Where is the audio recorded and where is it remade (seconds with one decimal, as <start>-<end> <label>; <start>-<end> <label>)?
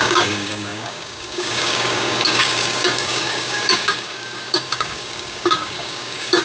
0.0-6.4 remade